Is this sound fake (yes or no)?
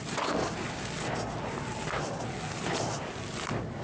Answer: no